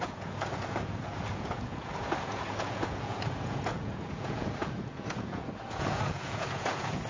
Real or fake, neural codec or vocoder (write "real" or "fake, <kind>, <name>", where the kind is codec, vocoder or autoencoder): fake, vocoder, Vocos